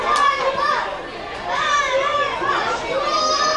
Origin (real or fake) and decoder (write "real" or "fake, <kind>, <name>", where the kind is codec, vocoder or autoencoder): real